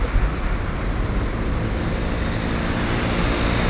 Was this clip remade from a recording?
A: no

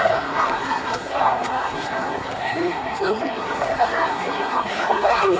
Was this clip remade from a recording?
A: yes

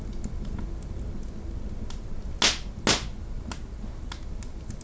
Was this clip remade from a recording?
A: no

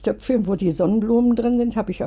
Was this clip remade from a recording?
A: no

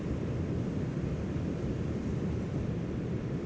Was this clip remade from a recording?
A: no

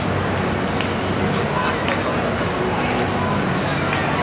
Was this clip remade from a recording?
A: no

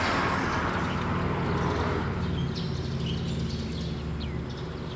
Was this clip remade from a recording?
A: no